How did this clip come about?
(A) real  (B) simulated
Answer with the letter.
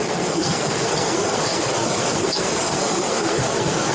B